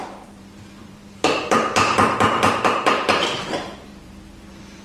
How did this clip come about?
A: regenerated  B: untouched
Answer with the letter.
A